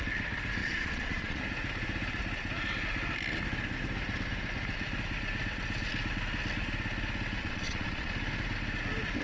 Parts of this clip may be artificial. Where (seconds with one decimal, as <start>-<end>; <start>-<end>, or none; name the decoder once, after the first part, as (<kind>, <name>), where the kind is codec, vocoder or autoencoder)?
0.6-1.4 (vocoder, Vocos); 7.4-8.1

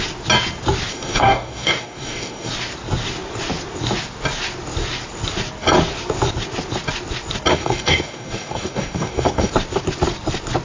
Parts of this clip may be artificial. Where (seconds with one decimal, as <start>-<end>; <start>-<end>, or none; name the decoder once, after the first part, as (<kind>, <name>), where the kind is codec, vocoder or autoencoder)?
0.9-2.5 (codec, DAC); 7.5-9.5

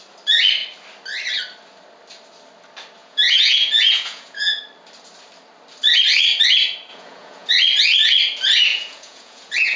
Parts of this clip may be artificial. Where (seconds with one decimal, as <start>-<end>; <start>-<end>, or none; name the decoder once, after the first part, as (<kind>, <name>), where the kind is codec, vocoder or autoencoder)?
3.0-4.6 (vocoder, Vocos); 6.9-7.5; 8.7-9.8

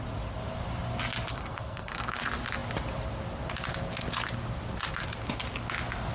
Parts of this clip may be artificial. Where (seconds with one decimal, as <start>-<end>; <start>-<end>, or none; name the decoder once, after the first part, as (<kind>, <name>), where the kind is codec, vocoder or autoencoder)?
1.3-2.2 (codec, SNAC)